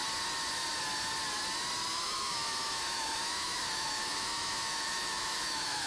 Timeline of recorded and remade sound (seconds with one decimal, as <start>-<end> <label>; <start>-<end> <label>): 0.0-1.9 recorded; 1.9-5.9 remade